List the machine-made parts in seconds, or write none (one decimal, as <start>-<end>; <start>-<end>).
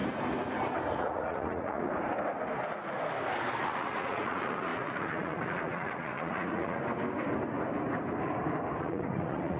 0.9-1.9; 3.6-6.8; 8.8-9.6